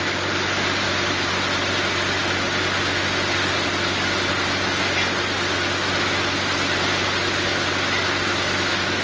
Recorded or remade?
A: recorded